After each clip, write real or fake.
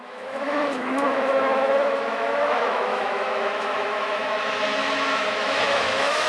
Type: fake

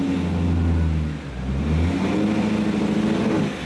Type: real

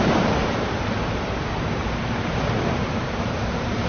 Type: fake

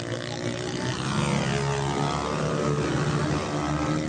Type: real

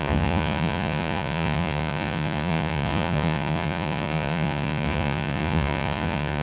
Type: fake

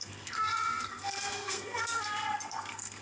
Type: fake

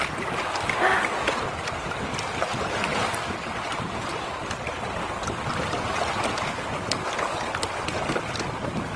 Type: real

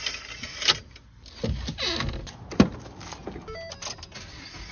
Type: real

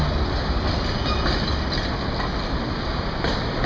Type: real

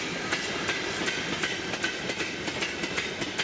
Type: real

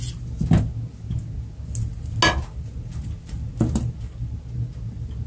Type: real